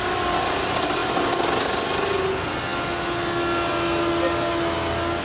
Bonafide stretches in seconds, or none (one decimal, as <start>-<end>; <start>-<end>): 0.0-5.2